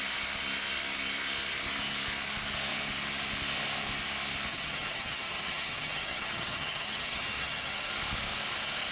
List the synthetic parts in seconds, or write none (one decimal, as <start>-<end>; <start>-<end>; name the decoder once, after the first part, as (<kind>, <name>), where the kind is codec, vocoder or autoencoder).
4.5-7.9 (vocoder, HiFi-GAN)